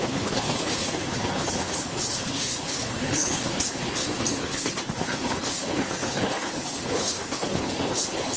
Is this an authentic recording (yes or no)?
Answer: no